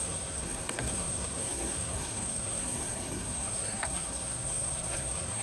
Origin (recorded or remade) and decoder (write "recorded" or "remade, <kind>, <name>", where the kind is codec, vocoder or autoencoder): remade, codec, SNAC